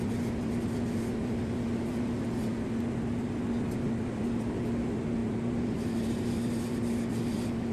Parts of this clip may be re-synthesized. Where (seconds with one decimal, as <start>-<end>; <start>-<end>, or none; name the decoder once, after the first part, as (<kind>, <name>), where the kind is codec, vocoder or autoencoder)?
5.2-6.2 (vocoder, BigVGAN v2)